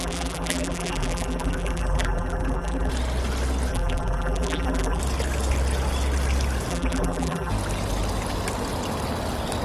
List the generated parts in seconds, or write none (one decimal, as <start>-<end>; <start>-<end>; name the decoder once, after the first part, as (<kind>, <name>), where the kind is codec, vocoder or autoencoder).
0.0-2.9 (vocoder, BigVGAN v2); 3.7-5.0; 6.7-7.5